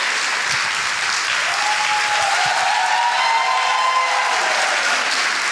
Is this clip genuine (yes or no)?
yes